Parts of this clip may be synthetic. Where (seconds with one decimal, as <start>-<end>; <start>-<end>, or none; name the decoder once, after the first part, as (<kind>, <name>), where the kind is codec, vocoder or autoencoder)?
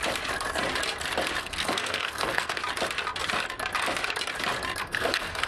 1.4-2.6 (codec, SNAC); 4.8-5.5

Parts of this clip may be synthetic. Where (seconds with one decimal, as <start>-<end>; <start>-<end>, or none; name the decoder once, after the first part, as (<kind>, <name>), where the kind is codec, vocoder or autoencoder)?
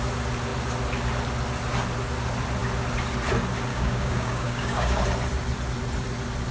3.7-5.0 (codec, DAC)